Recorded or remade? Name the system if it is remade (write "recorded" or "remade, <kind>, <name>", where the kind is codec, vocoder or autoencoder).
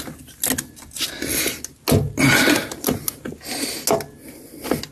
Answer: recorded